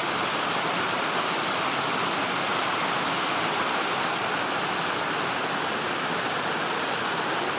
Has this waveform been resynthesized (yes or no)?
no